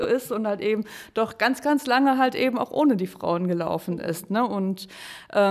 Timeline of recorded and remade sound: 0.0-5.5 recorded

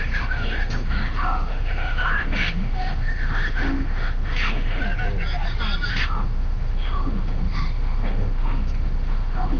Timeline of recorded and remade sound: 0.0-4.8 remade; 4.8-5.9 recorded; 5.9-9.6 remade

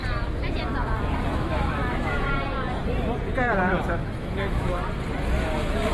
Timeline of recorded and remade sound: 0.0-1.3 recorded; 1.3-2.3 remade; 2.3-4.2 recorded; 4.2-4.8 remade; 4.8-5.9 recorded

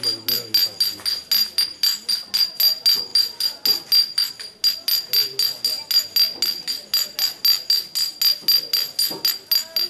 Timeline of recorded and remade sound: 0.0-9.9 recorded